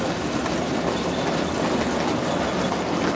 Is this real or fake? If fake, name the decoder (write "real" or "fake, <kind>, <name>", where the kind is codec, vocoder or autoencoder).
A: real